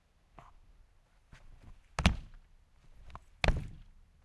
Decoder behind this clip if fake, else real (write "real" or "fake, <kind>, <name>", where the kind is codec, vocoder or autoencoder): real